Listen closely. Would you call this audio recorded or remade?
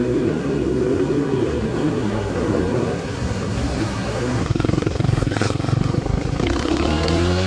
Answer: remade